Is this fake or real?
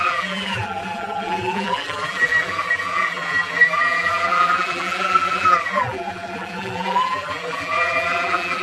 fake